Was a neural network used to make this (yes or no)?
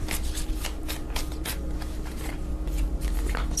no